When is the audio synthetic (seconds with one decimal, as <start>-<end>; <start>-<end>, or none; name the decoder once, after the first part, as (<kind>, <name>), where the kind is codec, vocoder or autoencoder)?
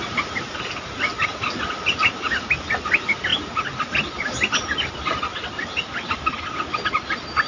none